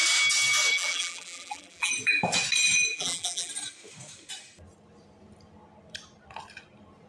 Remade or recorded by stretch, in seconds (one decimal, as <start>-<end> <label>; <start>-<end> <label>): 0.0-0.7 recorded; 0.7-1.9 remade; 1.9-2.9 recorded; 2.9-3.5 remade; 3.5-7.1 recorded